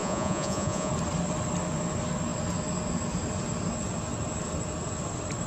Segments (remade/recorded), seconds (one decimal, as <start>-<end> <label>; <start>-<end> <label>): 0.0-0.9 remade; 0.9-5.5 recorded